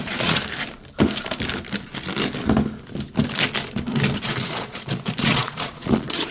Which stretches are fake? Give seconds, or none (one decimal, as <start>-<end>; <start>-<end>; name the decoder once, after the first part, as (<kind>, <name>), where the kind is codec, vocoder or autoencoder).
0.0-0.4 (vocoder, Vocos); 4.2-6.3

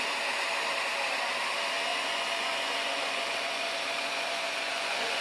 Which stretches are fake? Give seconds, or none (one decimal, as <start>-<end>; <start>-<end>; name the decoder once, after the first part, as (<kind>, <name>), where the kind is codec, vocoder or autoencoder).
1.9-5.2 (vocoder, Vocos)